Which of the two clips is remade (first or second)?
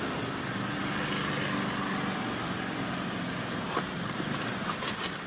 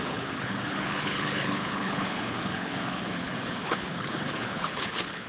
second